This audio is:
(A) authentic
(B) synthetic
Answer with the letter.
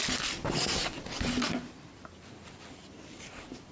A